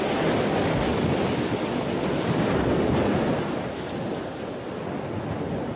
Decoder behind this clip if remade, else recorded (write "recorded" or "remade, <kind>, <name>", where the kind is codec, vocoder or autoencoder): recorded